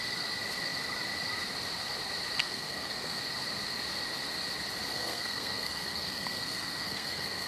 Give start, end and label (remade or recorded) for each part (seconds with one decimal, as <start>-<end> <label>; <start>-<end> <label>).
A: 0.0-2.4 recorded; 2.4-3.2 remade; 3.2-4.9 recorded; 4.9-7.5 remade